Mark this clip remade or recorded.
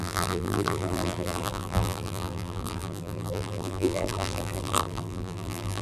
remade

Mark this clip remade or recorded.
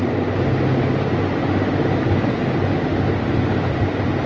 recorded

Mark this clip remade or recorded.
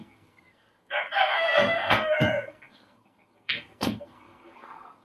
remade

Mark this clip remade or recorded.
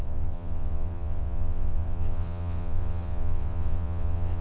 remade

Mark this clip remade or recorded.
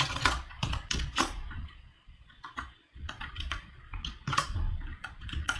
remade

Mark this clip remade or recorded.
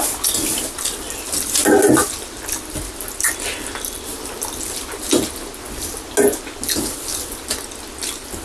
recorded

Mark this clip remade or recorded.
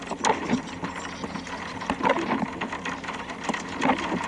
recorded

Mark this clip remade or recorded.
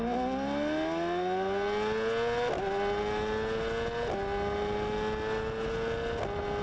recorded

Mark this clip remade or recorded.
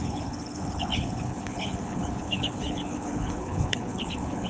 remade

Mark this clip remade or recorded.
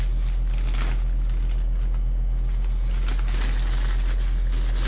recorded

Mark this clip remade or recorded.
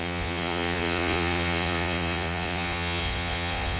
remade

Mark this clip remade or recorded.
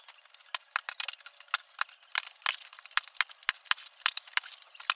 recorded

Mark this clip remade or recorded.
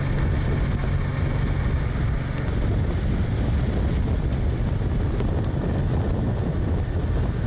recorded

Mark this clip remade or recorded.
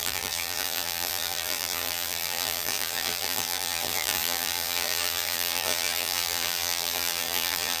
remade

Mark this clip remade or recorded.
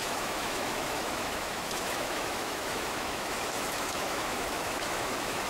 remade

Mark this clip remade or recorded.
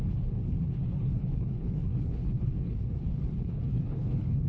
remade